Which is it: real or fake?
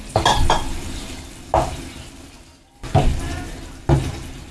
real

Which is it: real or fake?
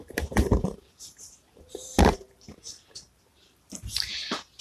fake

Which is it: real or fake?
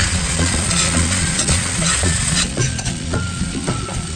fake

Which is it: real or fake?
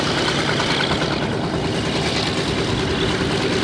real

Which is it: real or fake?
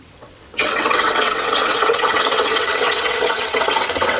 fake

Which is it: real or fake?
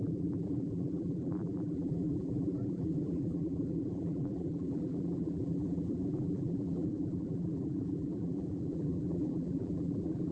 fake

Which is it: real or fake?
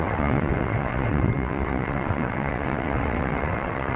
fake